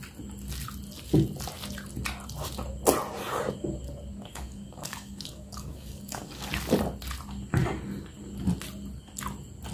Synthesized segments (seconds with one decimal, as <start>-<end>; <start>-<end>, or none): 4.3-6.5